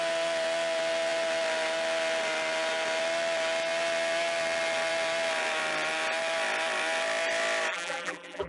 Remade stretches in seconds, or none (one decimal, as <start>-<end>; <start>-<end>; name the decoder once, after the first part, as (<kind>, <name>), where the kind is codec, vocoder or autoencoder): 7.7-8.5 (vocoder, BigVGAN v2)